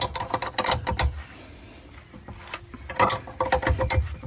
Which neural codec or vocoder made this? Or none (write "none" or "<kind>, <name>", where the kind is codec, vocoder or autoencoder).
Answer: none